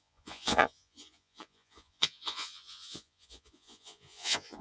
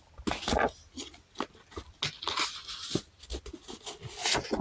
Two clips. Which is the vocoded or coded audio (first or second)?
first